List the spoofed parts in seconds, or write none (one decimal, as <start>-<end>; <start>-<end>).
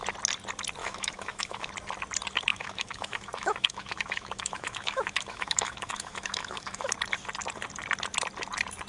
0.8-1.7; 2.5-6.9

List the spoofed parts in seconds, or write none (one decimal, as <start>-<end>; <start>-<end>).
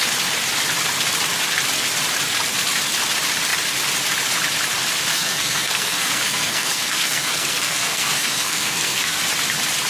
5.1-9.2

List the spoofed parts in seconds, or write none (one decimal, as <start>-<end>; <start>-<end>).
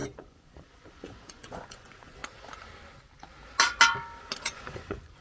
0.0-2.2; 4.4-5.2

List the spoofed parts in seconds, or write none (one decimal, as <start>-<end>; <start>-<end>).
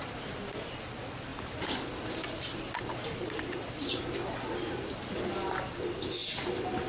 none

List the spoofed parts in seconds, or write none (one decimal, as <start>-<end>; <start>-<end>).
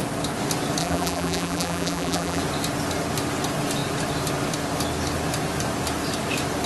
0.8-2.4